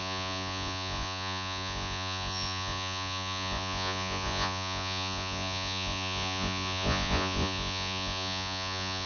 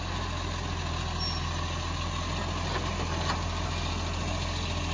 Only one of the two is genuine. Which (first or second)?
second